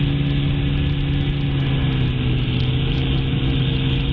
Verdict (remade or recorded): recorded